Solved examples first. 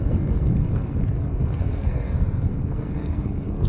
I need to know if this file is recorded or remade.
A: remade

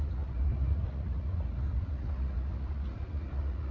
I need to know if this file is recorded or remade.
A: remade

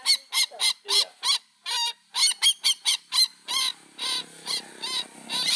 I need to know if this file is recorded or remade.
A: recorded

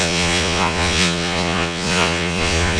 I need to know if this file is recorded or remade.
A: remade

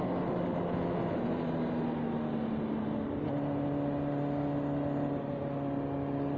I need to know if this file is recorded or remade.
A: recorded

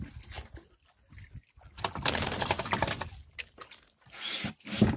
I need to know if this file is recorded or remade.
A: recorded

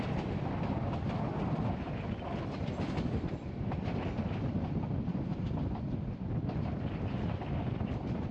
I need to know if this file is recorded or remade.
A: recorded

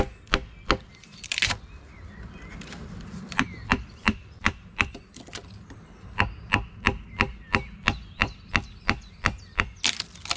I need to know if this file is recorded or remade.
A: recorded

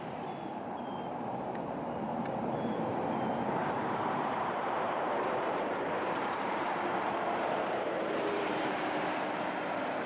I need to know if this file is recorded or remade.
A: remade